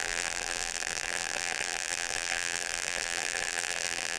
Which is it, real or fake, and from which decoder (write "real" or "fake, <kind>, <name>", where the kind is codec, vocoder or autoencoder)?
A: fake, vocoder, BigVGAN v2